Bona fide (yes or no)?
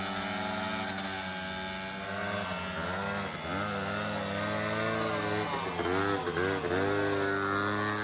yes